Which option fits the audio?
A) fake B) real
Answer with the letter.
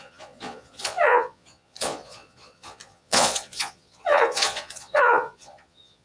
A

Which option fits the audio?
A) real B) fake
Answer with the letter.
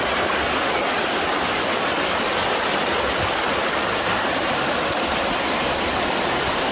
A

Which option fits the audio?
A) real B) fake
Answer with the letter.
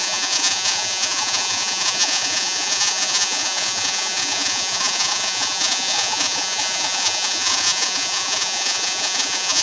B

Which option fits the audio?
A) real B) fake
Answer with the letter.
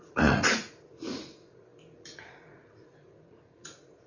B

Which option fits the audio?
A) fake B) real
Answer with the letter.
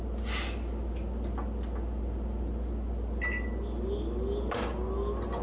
B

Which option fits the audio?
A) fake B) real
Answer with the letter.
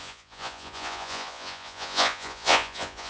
A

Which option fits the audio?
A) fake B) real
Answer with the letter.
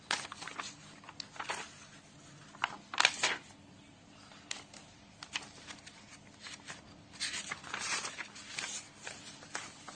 B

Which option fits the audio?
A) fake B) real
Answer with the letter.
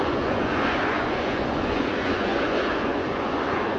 A